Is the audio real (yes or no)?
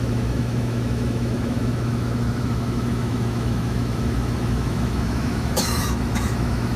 no